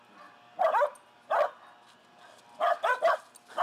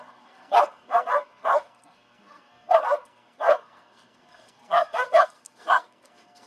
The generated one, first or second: second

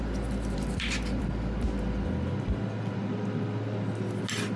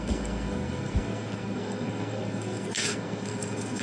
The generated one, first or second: second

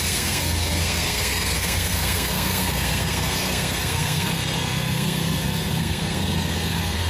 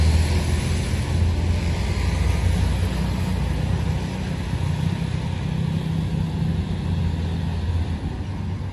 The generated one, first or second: first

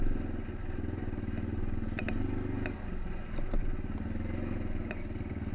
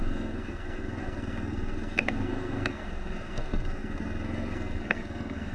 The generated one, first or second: second